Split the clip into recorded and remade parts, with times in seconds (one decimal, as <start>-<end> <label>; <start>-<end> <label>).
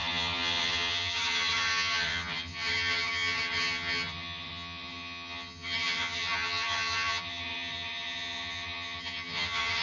0.0-9.8 remade